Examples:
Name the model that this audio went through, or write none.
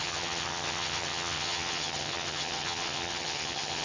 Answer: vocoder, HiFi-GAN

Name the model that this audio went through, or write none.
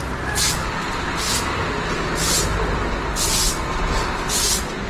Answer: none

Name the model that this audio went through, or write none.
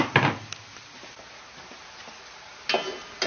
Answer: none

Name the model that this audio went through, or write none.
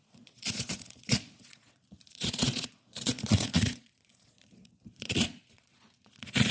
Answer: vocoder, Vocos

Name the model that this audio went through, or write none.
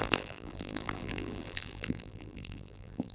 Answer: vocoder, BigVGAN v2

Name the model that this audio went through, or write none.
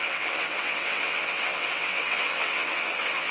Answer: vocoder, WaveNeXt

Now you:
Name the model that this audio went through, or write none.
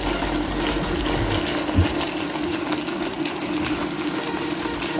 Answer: none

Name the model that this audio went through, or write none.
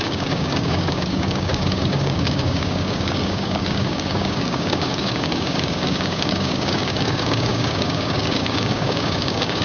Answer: codec, DAC